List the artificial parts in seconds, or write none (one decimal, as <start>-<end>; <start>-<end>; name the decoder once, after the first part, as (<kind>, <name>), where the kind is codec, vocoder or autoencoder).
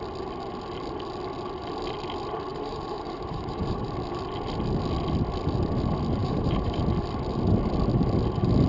2.5-3.9 (vocoder, BigVGAN v2); 6.2-6.8